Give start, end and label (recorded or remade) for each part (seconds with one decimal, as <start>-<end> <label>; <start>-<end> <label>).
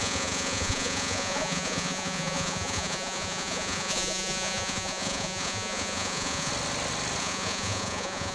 0.0-6.5 remade; 6.5-7.2 recorded; 7.2-8.3 remade